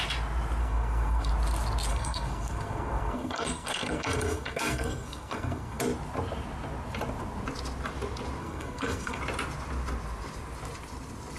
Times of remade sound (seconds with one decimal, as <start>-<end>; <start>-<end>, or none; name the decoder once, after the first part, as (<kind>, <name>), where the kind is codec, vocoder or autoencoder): 0.6-1.3 (codec, SNAC); 1.9-5.8; 8.4-9.2